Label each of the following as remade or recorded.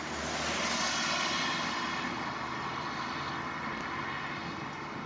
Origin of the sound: recorded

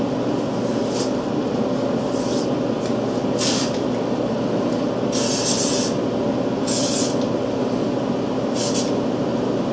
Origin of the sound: recorded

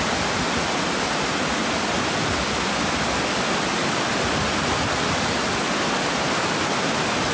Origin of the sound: recorded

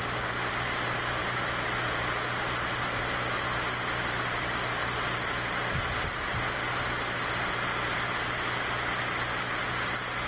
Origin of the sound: recorded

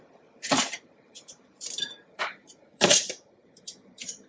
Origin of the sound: remade